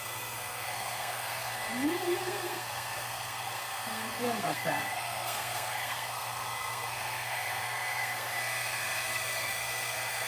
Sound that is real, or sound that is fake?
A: fake